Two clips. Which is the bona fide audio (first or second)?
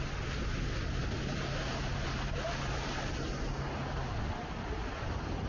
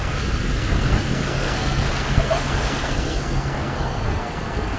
first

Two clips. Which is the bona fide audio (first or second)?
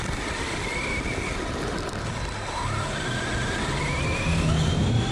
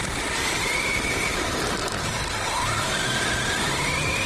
first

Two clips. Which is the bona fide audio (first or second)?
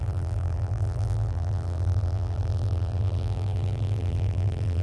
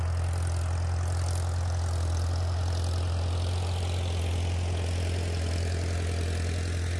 second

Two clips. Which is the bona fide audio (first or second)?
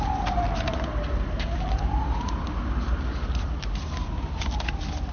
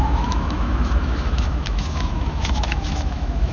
first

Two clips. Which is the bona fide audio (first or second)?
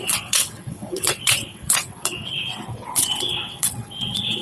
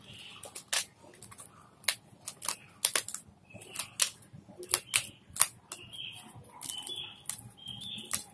second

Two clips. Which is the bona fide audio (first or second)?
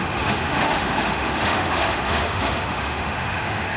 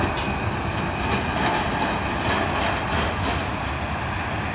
second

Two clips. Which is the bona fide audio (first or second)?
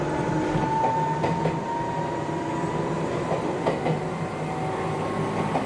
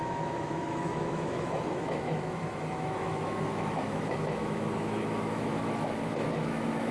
first